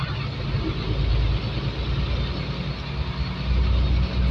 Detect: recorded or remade recorded